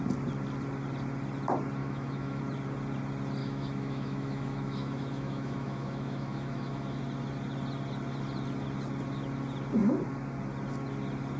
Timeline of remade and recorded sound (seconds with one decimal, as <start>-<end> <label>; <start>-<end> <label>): 0.0-1.8 recorded; 1.8-2.4 remade; 2.4-3.4 recorded; 3.4-7.0 remade; 7.0-11.4 recorded